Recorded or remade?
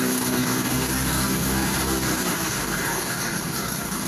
remade